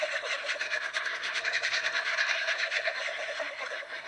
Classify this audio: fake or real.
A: fake